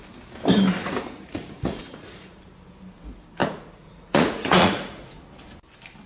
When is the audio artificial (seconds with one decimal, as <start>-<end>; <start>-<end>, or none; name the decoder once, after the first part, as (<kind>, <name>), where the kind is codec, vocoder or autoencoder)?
0.8-2.4 (vocoder, Vocos); 3.4-5.3